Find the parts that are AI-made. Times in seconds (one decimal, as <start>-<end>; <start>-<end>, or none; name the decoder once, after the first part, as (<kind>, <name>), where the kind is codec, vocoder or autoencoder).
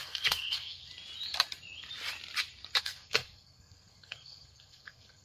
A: 0.0-0.9 (codec, SNAC); 2.8-5.2